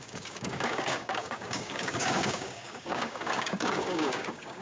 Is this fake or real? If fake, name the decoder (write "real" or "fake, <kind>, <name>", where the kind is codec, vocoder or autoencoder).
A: fake, codec, DAC